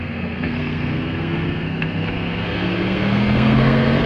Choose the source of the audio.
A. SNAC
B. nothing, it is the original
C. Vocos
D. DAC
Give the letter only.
A